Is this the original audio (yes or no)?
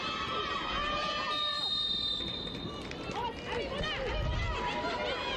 yes